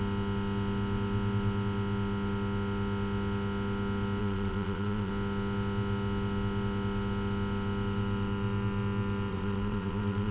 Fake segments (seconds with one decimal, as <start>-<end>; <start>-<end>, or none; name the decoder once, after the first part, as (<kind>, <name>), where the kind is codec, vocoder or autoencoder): 4.2-5.1 (vocoder, Vocos); 9.3-10.3